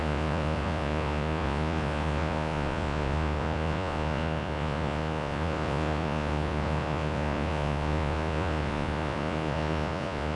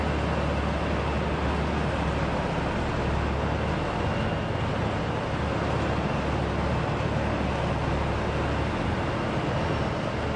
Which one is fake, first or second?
first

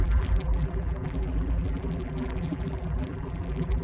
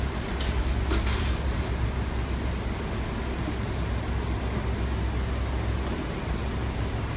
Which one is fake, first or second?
first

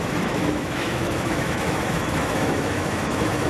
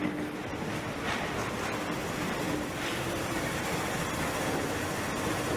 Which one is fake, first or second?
first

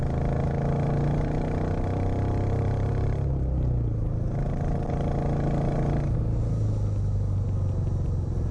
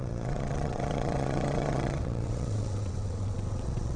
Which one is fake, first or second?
second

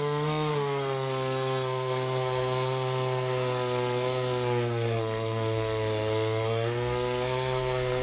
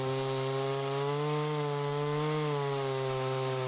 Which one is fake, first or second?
first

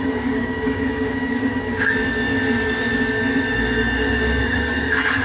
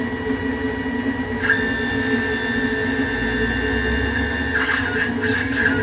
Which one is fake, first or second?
first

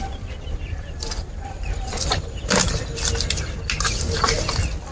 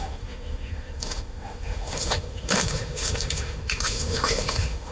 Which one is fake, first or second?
second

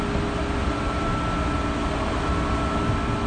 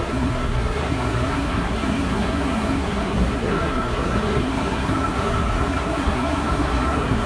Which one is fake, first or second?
second